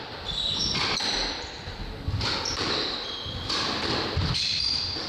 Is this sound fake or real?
real